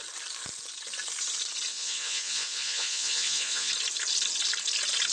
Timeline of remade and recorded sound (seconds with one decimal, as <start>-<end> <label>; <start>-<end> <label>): 0.0-1.7 recorded; 1.7-3.7 remade; 3.7-5.1 recorded

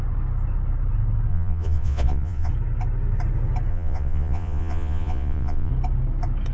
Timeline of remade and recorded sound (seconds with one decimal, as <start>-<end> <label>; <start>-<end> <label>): 0.0-1.3 recorded; 1.3-2.5 remade; 2.5-3.7 recorded; 3.7-5.7 remade; 5.7-6.5 recorded

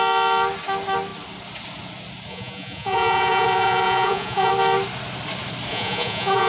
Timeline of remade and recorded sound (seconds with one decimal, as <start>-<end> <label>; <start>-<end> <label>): 0.0-2.3 recorded; 2.3-4.5 remade; 4.5-5.7 recorded; 5.7-6.5 remade

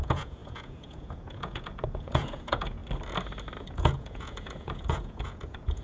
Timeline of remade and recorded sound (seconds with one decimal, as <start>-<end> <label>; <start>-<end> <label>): 0.0-2.8 remade; 2.8-3.6 recorded; 3.6-5.8 remade

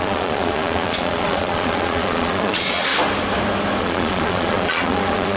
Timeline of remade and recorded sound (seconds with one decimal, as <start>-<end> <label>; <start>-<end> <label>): 0.0-2.9 remade; 2.9-3.8 recorded; 3.8-5.4 remade